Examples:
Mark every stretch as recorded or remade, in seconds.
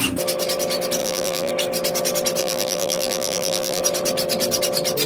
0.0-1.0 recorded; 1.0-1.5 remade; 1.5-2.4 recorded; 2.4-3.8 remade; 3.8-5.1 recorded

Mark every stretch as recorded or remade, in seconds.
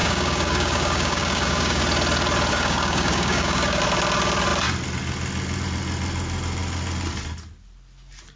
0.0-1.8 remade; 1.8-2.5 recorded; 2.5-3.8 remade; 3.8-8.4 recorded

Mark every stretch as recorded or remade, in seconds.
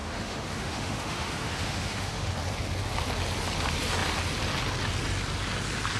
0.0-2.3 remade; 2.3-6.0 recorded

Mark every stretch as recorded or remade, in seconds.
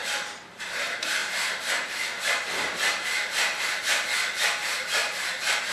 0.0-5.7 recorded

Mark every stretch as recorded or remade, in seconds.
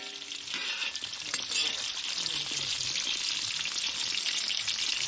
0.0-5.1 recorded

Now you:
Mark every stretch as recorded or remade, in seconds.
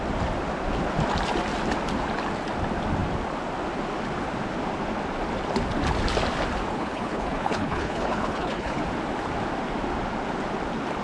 0.0-6.7 recorded; 6.7-8.8 remade; 8.8-11.0 recorded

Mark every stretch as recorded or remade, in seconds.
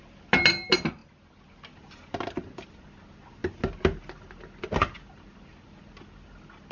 0.0-6.7 recorded